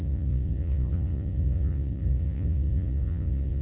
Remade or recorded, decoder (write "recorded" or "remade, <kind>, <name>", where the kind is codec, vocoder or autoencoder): remade, vocoder, Vocos